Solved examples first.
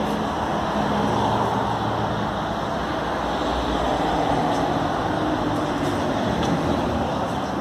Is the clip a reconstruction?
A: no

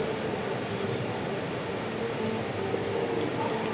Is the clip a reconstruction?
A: no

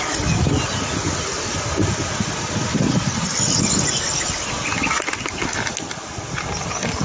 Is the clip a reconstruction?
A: no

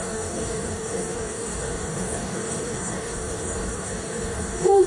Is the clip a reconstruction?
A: yes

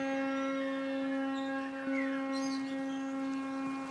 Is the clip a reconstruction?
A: no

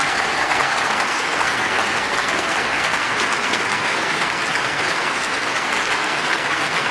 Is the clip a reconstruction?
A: yes